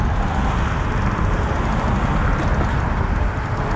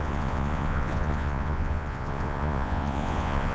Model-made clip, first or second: second